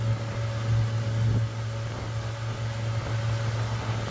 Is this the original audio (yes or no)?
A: yes